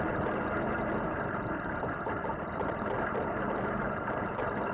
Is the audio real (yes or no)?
no